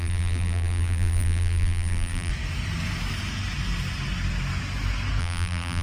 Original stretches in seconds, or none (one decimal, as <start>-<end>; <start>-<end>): 2.3-5.2